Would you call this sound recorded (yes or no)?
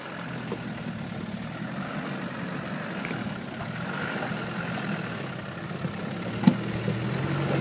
yes